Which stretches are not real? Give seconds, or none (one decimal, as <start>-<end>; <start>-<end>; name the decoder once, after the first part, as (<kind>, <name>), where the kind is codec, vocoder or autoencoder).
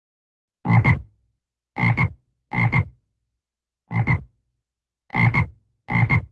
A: none